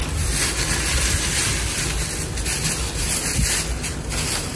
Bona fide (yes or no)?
yes